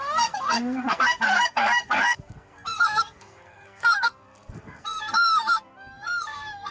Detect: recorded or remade remade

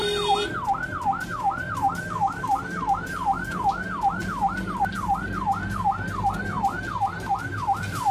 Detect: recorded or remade recorded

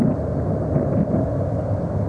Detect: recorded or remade recorded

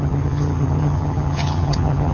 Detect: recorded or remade remade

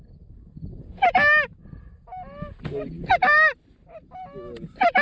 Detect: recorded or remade recorded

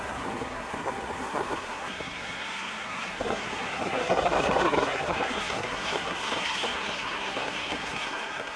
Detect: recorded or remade remade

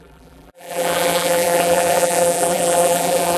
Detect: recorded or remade remade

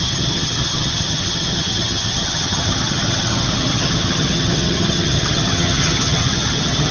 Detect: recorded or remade remade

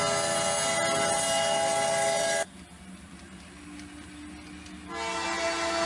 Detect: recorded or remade recorded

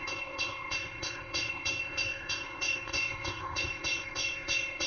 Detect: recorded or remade remade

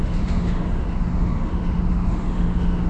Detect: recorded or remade remade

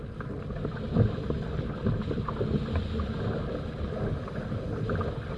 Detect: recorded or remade recorded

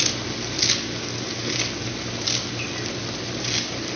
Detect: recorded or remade recorded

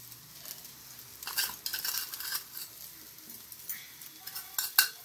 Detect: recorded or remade recorded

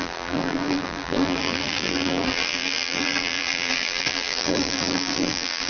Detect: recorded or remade remade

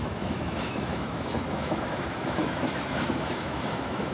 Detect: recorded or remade remade